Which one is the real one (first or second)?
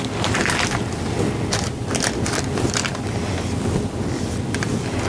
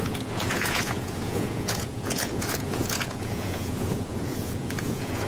first